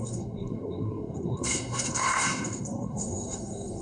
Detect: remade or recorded remade